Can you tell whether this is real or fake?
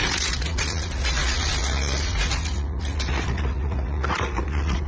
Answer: fake